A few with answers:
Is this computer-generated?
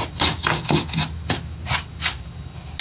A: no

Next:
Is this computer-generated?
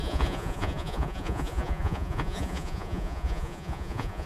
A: yes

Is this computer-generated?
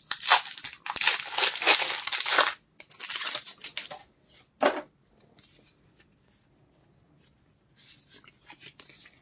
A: no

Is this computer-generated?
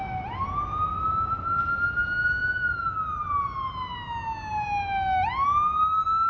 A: no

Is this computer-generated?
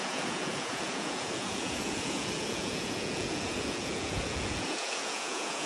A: yes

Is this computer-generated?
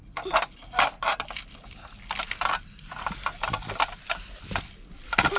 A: no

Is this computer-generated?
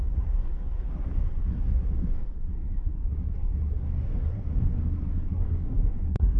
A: yes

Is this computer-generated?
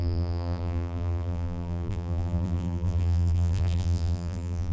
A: yes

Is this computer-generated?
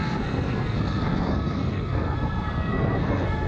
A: yes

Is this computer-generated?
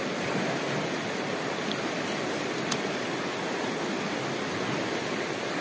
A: no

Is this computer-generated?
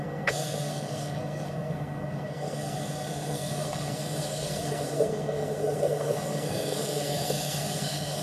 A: yes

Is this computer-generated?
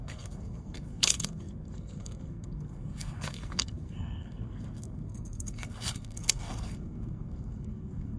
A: yes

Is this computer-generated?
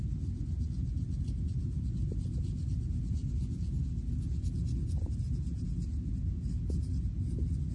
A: no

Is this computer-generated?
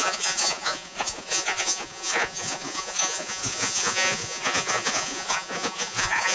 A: yes